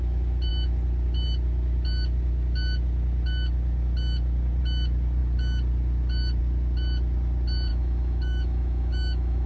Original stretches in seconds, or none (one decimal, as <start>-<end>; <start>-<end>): 0.0-7.7